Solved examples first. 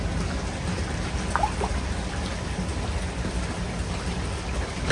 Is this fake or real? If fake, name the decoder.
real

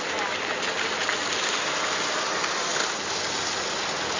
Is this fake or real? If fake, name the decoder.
real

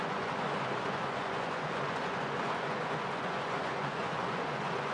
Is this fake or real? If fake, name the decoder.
fake, vocoder, Vocos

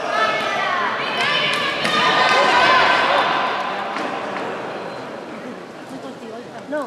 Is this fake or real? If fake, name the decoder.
real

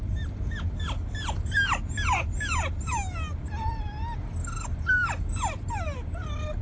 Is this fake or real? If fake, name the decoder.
real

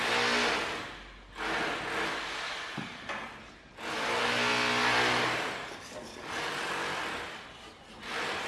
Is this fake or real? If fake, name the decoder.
real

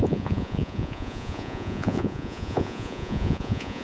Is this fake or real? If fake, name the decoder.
fake, vocoder, Vocos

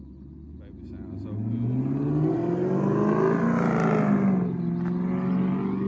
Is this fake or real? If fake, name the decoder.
real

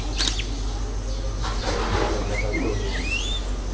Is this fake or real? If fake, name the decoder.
real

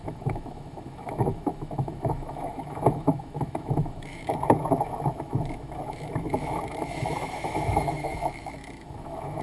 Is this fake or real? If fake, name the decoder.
fake, autoencoder, DAC-VAE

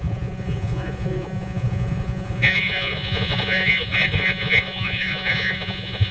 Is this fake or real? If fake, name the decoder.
fake, vocoder, Vocos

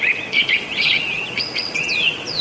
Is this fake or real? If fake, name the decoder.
fake, vocoder, WaveNeXt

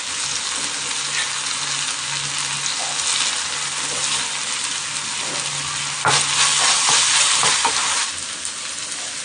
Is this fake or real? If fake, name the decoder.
real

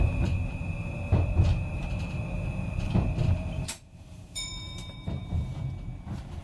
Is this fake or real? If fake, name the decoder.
fake, vocoder, BigVGAN v2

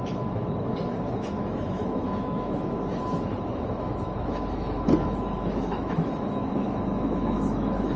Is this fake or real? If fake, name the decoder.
fake, autoencoder, DAC-VAE